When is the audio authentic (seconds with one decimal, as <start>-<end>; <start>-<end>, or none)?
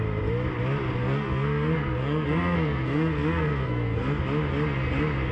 0.0-1.0; 4.2-5.3